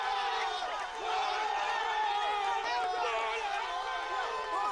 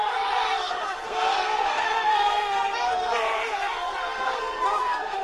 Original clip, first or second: first